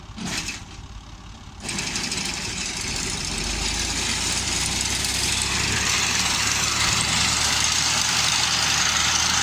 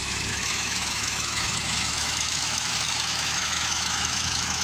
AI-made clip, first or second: second